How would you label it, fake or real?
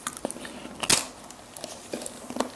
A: real